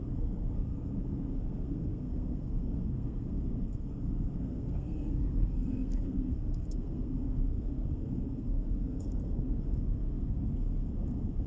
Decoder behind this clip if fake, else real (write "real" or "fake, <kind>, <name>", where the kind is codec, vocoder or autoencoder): fake, codec, SNAC